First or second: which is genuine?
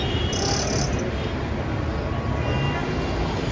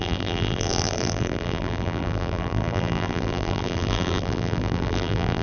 first